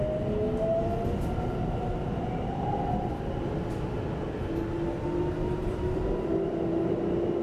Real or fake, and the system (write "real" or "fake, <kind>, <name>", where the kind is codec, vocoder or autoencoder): real